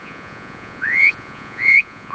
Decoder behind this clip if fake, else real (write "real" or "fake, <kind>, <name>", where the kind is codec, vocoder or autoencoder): fake, vocoder, Vocos